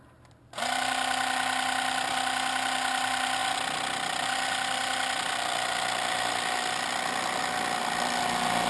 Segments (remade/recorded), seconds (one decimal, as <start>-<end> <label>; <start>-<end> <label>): 0.0-8.7 recorded